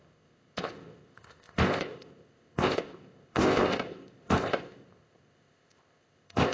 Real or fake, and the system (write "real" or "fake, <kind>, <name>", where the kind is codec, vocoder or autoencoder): fake, codec, ZipCodec